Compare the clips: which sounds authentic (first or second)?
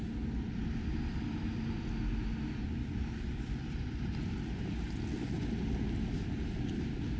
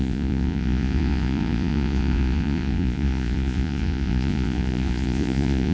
first